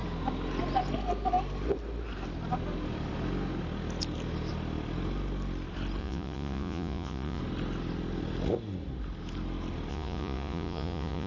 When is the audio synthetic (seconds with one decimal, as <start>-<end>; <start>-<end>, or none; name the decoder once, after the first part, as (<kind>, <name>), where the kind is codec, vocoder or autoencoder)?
6.0-7.4 (vocoder, Vocos); 9.9-11.3